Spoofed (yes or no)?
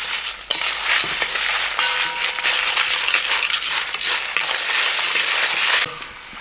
no